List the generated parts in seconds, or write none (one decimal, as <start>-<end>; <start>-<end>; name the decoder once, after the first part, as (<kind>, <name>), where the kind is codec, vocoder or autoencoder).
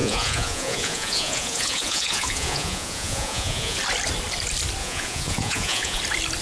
0.0-3.8 (vocoder, Vocos); 4.8-6.0